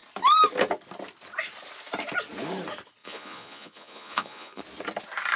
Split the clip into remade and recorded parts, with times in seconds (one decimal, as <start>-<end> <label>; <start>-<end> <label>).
0.0-3.0 recorded; 3.0-4.6 remade; 4.6-5.4 recorded